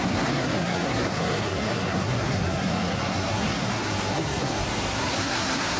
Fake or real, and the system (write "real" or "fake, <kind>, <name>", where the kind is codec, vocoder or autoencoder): fake, codec, SNAC